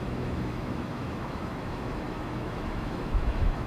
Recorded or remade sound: remade